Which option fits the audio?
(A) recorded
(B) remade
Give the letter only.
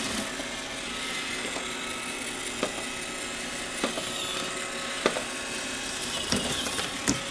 A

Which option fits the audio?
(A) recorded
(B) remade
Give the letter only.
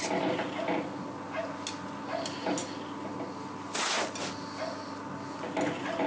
A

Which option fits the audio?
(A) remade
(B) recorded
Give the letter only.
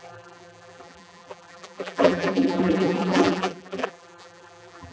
A